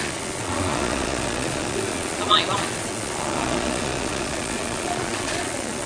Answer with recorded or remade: remade